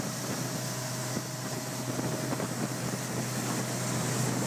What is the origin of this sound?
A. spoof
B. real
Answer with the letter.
B